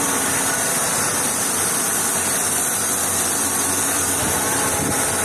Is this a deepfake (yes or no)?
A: yes